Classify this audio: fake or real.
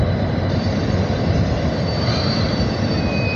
fake